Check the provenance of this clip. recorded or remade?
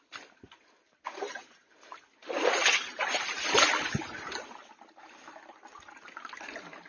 recorded